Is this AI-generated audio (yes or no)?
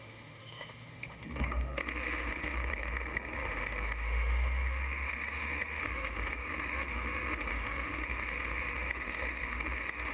yes